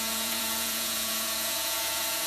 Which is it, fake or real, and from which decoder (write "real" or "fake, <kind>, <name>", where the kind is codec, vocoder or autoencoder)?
fake, vocoder, Vocos